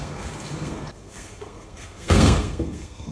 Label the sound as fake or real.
fake